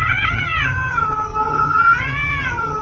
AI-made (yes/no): yes